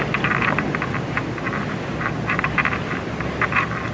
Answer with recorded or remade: recorded